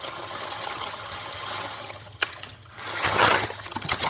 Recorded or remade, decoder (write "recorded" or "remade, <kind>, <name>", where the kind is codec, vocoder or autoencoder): remade, vocoder, HiFi-GAN